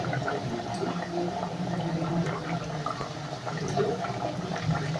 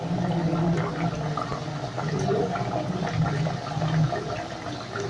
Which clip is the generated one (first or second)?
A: first